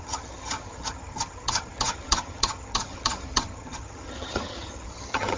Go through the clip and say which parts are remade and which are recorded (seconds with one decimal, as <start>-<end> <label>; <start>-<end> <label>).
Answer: 0.0-5.4 remade